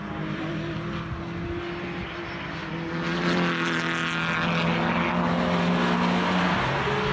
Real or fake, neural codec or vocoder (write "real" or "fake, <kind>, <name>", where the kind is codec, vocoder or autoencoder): real